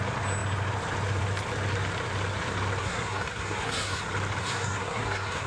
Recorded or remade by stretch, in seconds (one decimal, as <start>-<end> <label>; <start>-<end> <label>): 0.0-2.8 recorded; 2.8-4.0 remade; 4.0-4.4 recorded; 4.4-5.5 remade